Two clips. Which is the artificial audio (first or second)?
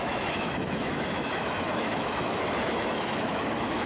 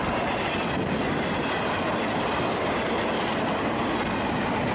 first